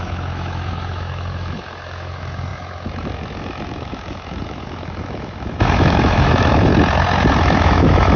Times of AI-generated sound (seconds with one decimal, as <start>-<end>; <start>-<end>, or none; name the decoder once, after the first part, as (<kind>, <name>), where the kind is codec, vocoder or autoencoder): 0.0-6.7 (autoencoder, DAC-VAE); 7.4-8.2